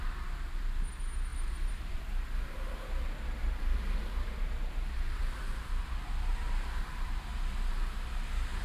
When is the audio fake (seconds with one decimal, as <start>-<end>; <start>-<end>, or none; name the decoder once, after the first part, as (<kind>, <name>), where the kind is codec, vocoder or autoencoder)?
1.3-2.0 (vocoder, BigVGAN v2); 3.4-7.3